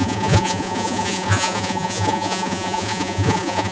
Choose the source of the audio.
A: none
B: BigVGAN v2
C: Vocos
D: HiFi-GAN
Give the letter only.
C